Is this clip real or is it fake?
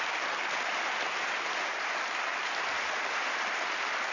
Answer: real